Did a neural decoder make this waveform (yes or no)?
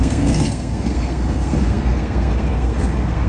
yes